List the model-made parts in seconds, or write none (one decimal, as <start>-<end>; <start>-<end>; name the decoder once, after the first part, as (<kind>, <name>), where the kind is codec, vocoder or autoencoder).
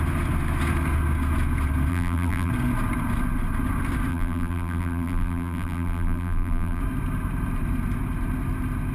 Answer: 1.9-2.5 (vocoder, BigVGAN v2); 4.1-6.8